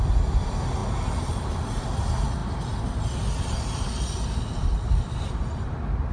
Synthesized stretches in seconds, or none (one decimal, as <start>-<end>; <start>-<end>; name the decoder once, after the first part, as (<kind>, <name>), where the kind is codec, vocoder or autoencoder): none